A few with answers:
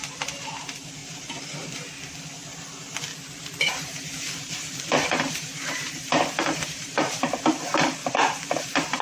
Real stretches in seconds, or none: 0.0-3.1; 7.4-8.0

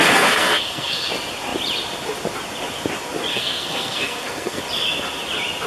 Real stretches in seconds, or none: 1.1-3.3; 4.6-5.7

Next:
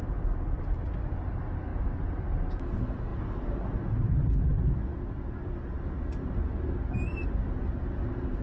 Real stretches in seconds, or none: 0.0-1.7; 2.2-8.4

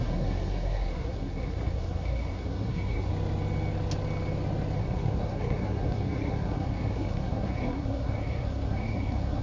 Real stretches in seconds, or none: 3.1-4.8